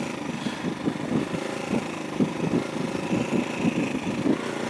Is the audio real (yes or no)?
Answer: yes